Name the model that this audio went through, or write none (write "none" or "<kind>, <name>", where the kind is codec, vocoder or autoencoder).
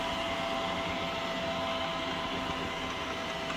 none